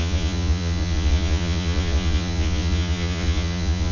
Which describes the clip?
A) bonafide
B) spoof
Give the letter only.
B